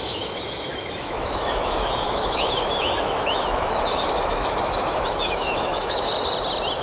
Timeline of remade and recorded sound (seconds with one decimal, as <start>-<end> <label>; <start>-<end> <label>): 0.0-6.1 remade; 6.1-6.8 recorded